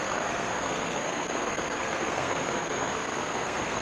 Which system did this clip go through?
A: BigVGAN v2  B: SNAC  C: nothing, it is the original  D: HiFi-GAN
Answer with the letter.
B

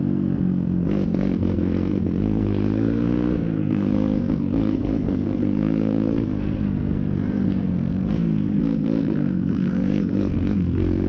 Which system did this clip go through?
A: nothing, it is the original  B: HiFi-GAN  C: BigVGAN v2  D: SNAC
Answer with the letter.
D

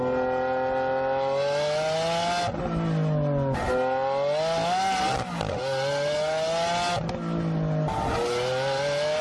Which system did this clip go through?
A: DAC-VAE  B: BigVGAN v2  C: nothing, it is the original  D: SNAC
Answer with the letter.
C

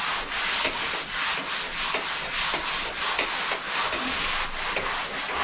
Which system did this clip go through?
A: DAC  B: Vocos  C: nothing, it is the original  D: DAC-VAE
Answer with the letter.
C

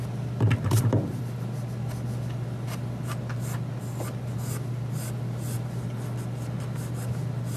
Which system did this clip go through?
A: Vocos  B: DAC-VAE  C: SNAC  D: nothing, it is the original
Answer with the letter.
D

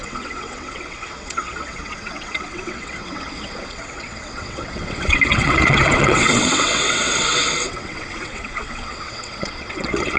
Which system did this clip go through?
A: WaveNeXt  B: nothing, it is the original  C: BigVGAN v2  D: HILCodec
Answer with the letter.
A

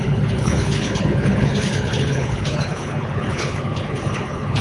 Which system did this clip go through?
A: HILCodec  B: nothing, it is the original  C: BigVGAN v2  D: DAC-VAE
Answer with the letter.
A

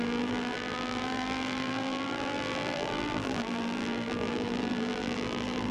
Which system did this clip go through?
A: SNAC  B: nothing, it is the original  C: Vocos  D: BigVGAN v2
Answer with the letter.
D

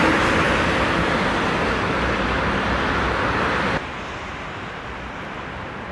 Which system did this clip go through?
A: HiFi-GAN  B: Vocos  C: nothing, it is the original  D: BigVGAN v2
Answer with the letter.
C